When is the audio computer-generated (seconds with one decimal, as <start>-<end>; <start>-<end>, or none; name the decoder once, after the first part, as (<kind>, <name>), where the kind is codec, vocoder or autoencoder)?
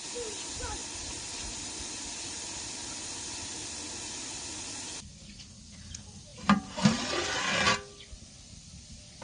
none